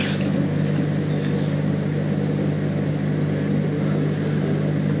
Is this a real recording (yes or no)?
yes